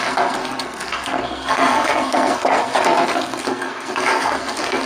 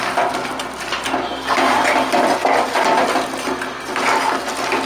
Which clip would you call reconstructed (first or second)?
first